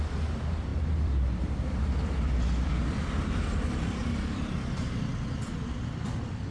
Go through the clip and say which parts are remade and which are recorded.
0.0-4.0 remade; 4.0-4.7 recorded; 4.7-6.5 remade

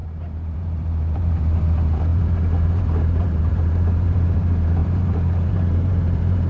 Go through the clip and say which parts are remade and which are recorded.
0.0-6.5 remade

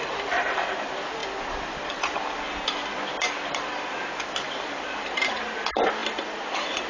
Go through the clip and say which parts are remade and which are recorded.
0.0-1.2 recorded; 1.2-5.3 remade; 5.3-6.0 recorded; 6.0-6.5 remade; 6.5-6.9 recorded

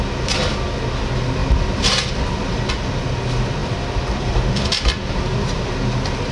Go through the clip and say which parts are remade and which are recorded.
0.0-1.4 recorded; 1.4-2.7 remade; 2.7-3.6 recorded; 3.6-5.7 remade; 5.7-6.3 recorded